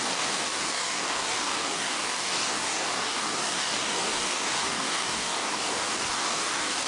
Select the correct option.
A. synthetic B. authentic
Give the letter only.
A